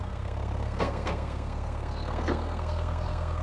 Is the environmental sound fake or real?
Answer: fake